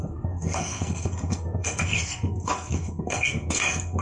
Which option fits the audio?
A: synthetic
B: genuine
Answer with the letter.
A